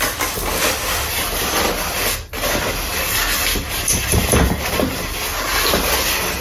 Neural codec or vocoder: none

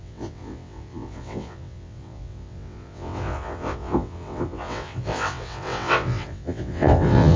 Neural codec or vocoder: vocoder, WaveNeXt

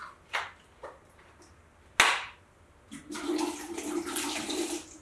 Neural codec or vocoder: none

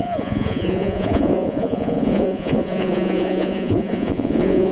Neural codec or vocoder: vocoder, Vocos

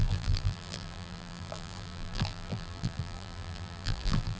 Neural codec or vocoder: vocoder, BigVGAN v2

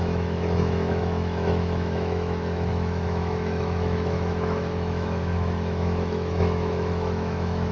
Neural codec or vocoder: autoencoder, DAC-VAE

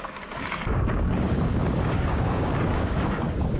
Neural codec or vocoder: codec, DAC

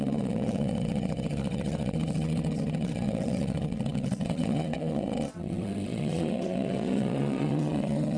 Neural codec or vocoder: vocoder, WaveNeXt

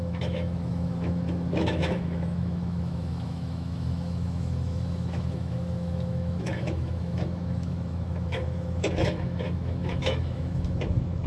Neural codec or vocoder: autoencoder, DAC-VAE